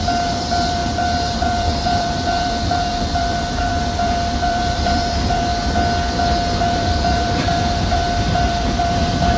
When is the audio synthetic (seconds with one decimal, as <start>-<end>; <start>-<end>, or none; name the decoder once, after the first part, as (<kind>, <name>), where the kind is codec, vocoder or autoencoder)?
0.0-5.5 (vocoder, BigVGAN v2); 6.6-9.4